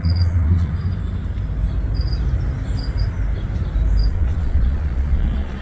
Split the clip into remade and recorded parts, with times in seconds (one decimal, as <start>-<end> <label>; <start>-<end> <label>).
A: 0.0-0.7 remade; 0.7-4.1 recorded; 4.1-5.6 remade